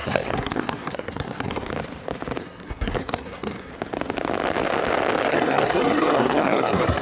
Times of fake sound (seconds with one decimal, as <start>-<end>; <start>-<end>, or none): 0.0-1.7; 2.4-3.7; 5.3-7.0